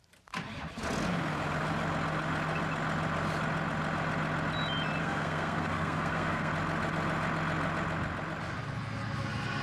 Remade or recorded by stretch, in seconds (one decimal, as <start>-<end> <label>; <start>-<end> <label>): 0.0-5.0 recorded; 5.0-6.5 remade; 6.5-9.6 recorded